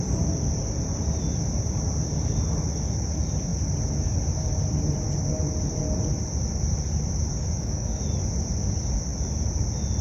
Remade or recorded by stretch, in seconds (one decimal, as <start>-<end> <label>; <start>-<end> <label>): 0.0-7.3 recorded; 7.3-8.0 remade; 8.0-10.0 recorded